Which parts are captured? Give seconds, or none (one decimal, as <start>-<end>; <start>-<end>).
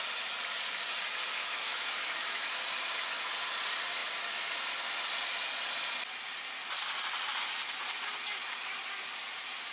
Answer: 0.0-1.4; 2.6-9.7